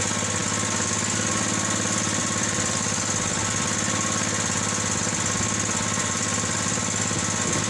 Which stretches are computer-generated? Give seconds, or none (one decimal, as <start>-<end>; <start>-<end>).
2.2-3.1; 6.0-6.8